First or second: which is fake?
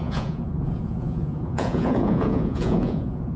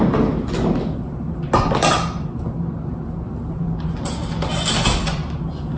first